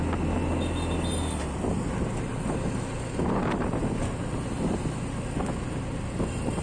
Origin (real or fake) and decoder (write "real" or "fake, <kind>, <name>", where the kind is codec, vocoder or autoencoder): real